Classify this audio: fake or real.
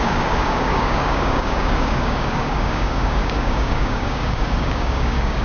fake